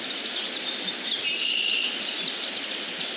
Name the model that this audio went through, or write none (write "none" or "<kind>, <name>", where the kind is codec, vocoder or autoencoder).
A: none